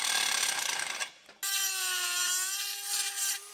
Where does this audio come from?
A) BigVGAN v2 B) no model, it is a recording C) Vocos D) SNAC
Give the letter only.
B